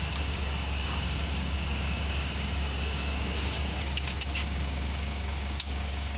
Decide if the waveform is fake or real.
fake